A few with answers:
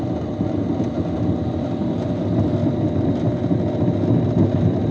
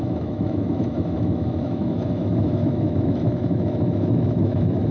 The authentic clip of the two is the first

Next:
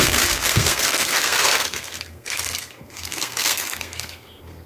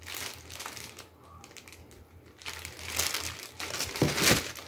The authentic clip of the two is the second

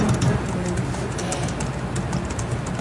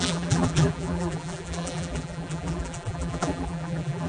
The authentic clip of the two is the first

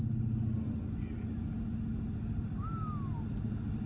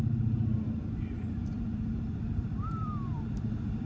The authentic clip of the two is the first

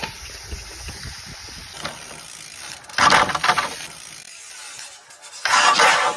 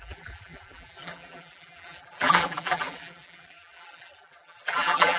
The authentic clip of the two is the first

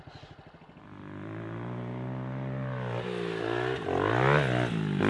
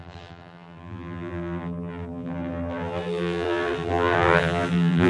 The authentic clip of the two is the first